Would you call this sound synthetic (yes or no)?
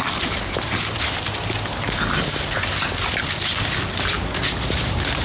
no